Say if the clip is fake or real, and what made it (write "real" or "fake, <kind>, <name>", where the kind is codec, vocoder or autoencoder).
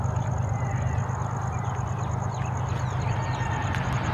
real